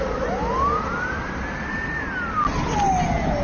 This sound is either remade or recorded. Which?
recorded